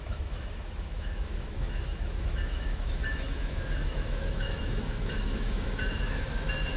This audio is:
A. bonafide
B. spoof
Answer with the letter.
B